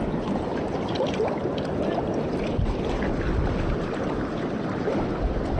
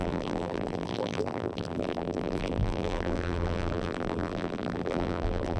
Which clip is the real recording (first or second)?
first